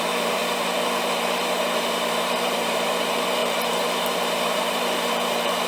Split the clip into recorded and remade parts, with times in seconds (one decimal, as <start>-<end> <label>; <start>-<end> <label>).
0.0-5.7 remade